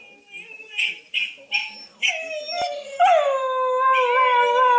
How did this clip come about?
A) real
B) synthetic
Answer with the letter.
A